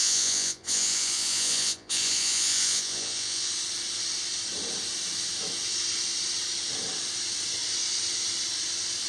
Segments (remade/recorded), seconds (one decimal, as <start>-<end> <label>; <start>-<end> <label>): 0.0-3.5 remade; 3.5-9.1 recorded